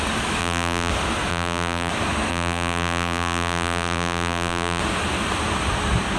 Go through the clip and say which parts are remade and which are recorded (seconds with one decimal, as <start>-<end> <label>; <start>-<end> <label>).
0.0-0.4 recorded; 0.4-0.9 remade; 0.9-1.3 recorded; 1.3-1.9 remade; 1.9-2.3 recorded; 2.3-4.8 remade; 4.8-6.2 recorded